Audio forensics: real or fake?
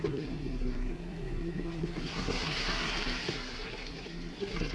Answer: fake